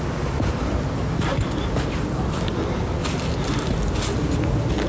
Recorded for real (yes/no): yes